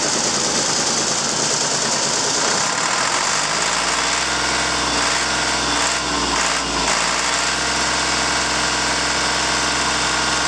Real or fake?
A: real